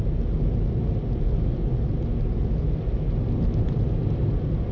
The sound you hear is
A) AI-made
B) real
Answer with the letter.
B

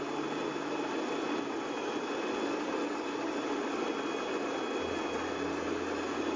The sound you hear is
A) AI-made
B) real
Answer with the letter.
B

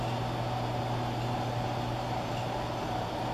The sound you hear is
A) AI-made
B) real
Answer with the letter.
B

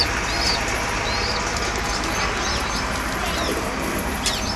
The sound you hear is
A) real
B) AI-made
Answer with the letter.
A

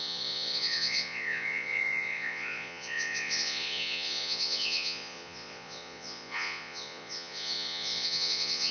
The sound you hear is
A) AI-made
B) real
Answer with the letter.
A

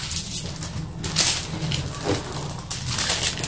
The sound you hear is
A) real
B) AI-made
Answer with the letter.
A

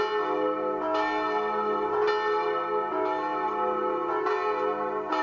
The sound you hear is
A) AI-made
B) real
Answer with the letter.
B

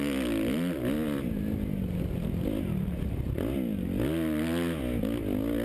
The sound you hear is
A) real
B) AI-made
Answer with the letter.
A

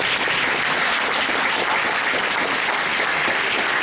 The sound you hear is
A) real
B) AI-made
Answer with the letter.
A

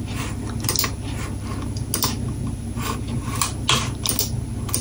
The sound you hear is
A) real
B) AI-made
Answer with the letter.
A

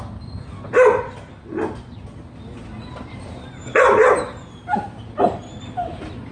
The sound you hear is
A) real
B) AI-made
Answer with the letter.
A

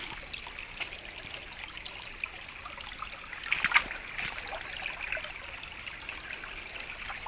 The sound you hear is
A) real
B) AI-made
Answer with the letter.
A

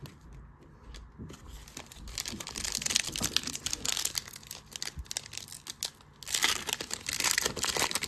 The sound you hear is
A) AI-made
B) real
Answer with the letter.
B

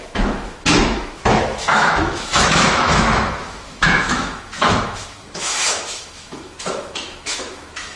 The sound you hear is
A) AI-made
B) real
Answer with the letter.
A